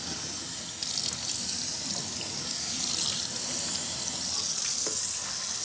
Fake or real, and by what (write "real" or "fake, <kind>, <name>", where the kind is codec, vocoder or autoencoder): real